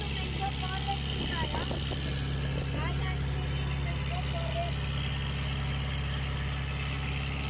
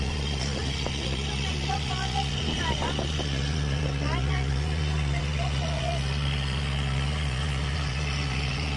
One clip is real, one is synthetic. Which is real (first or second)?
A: first